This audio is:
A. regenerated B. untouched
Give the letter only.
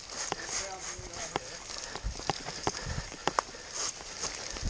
B